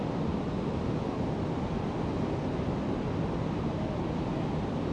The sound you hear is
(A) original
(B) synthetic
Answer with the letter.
A